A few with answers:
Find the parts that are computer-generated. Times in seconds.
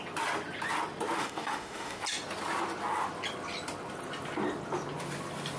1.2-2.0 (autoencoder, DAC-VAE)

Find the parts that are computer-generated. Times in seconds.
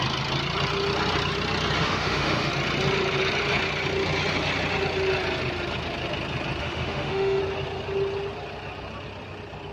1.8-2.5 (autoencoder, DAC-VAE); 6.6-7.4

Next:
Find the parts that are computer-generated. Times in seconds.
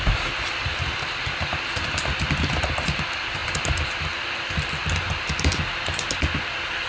none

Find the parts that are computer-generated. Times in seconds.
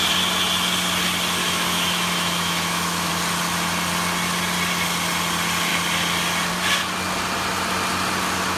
1.4-3.1 (autoencoder, DAC-VAE)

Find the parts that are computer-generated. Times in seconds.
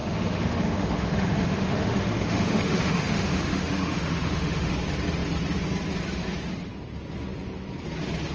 0.0-4.7 (autoencoder, DAC-VAE)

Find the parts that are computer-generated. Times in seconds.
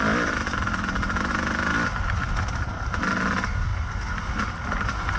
none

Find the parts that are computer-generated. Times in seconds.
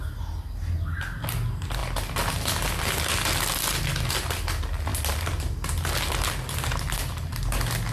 none